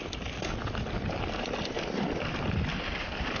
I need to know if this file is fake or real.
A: real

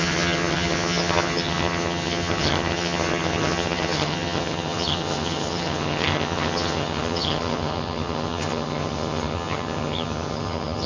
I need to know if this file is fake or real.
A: fake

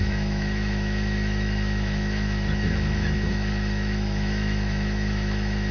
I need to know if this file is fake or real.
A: fake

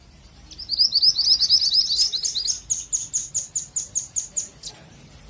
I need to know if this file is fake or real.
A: real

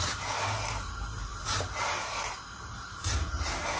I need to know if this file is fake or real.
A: fake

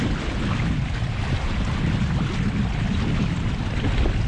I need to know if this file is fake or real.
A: real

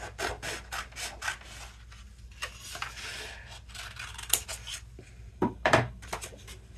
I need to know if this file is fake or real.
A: real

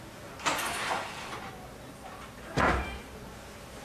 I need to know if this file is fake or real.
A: real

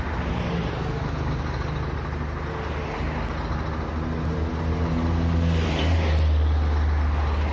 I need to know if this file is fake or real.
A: real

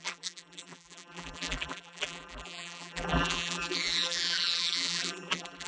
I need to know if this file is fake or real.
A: fake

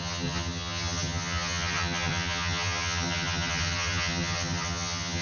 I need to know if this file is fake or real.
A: fake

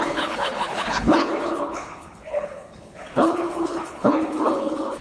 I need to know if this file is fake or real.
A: fake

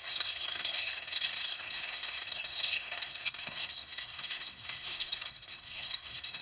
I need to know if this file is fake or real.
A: fake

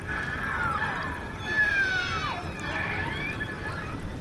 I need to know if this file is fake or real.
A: real